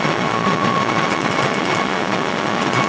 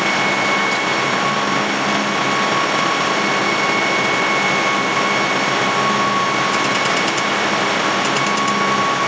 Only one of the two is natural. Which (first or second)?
second